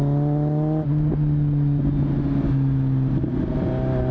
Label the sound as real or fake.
real